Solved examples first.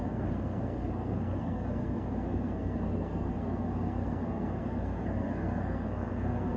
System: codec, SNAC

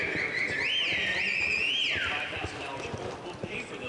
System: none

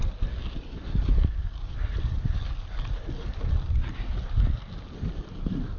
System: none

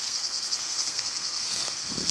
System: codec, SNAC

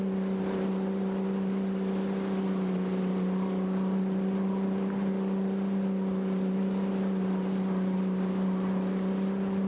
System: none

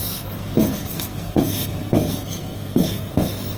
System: codec, SNAC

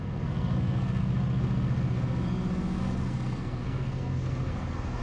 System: codec, SNAC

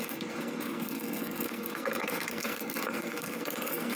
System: codec, SNAC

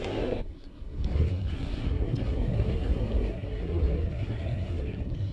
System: codec, SNAC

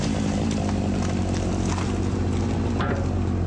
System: none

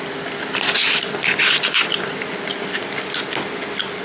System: none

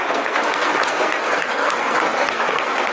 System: codec, SNAC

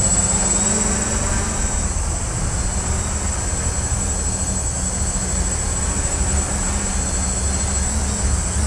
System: none